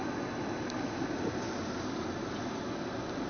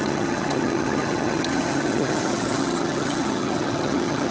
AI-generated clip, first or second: second